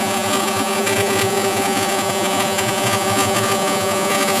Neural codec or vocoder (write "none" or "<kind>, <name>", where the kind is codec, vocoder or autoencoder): vocoder, Vocos